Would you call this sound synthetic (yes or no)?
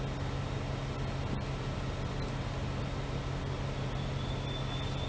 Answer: no